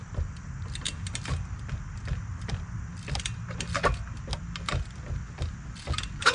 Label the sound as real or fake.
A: real